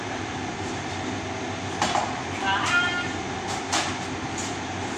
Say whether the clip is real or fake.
real